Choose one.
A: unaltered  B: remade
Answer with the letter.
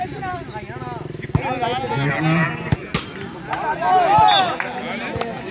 A